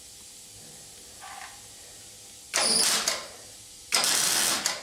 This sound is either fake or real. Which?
real